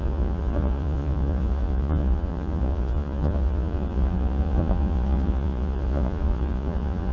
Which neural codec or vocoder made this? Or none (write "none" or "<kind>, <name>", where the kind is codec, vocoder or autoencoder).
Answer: vocoder, Vocos